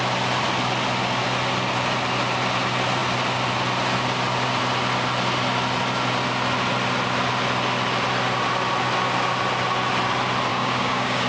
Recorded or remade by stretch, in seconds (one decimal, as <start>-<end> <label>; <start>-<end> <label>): 0.0-10.5 recorded; 10.5-11.3 remade